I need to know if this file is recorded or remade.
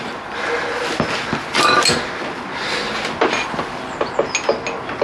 recorded